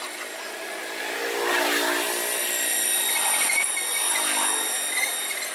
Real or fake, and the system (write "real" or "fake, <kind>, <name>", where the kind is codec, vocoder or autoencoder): real